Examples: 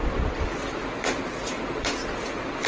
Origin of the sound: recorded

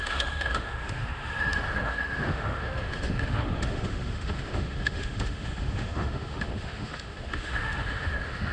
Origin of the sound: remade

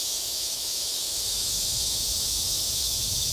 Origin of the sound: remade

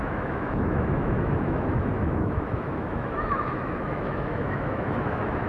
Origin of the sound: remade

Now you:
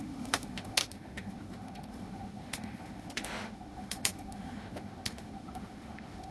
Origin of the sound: remade